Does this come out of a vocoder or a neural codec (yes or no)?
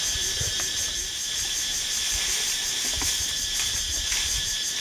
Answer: no